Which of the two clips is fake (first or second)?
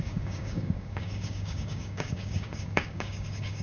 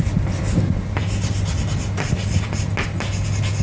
first